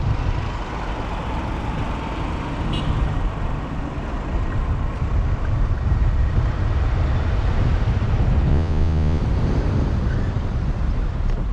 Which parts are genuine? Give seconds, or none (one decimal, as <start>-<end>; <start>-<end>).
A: 0.0-8.5; 9.2-11.5